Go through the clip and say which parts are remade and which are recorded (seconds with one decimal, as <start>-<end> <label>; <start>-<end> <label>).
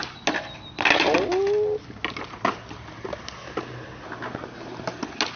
0.0-5.4 recorded